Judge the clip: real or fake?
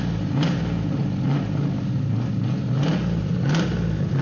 real